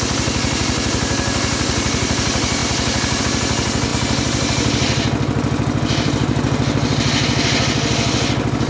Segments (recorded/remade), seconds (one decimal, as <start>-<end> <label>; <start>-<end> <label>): 0.0-8.7 recorded